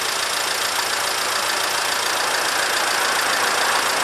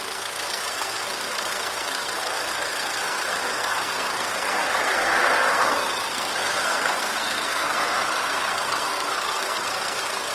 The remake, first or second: second